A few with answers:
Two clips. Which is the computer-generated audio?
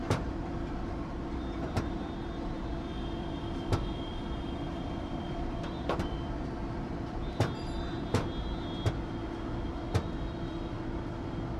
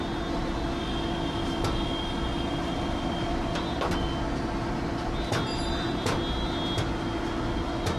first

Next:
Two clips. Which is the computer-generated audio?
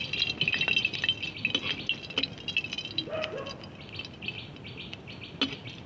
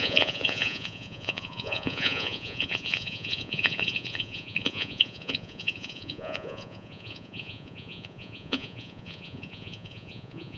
second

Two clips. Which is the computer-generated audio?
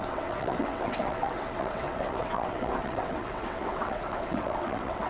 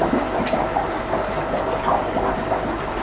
first